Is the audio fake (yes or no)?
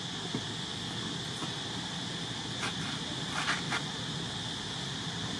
no